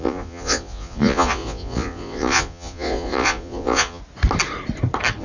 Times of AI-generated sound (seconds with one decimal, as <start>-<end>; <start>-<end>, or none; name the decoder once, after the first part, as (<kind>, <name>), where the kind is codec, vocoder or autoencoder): 0.0-4.0 (vocoder, Vocos)